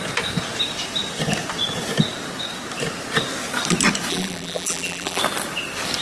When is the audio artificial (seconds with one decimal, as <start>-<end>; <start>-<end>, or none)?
4.1-5.2